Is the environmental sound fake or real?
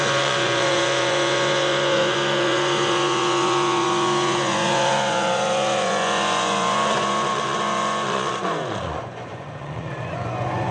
fake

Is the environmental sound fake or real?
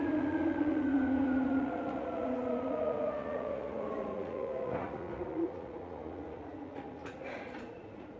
fake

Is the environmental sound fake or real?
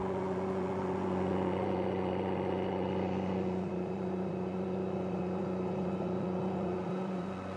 fake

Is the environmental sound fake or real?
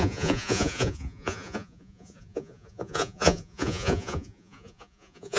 fake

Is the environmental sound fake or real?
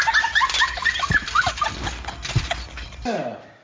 real